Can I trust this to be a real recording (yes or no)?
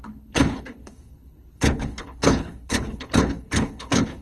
no